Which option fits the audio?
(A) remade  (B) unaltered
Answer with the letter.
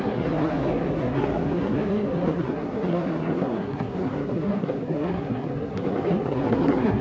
A